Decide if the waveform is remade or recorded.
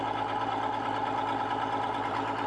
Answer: recorded